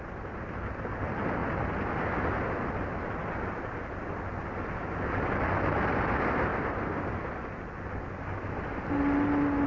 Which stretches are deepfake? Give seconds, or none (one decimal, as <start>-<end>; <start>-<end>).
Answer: none